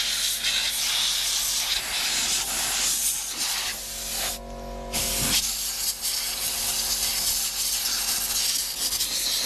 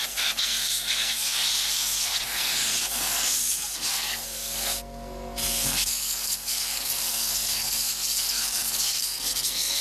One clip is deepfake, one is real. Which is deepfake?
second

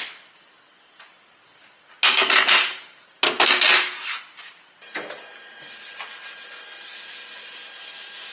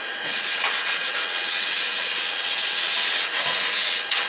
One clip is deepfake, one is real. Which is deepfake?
second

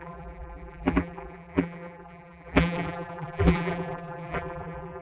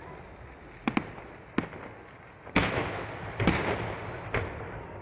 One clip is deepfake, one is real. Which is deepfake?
first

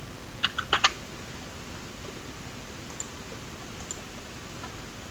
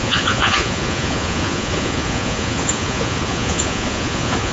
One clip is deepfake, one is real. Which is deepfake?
second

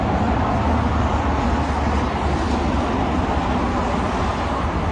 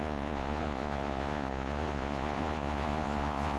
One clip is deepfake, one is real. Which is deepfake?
second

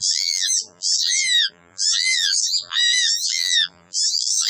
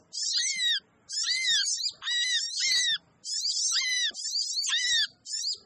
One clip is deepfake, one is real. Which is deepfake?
first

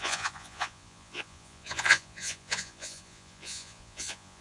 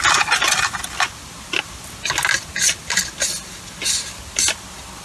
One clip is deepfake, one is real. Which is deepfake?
first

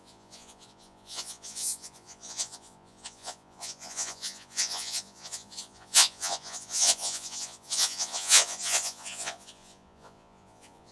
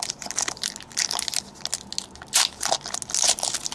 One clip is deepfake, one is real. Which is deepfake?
first